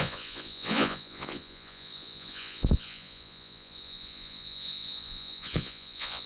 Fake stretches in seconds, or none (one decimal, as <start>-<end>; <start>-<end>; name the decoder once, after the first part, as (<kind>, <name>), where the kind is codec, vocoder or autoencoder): 0.0-6.3 (vocoder, Vocos)